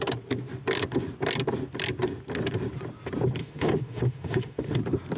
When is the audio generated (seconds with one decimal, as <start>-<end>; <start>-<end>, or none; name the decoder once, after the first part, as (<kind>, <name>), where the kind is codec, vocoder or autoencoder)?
3.4-4.8 (autoencoder, DAC-VAE)